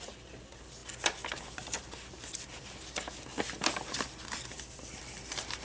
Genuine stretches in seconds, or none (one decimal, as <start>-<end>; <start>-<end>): 0.0-5.6